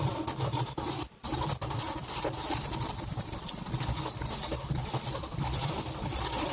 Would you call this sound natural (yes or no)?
no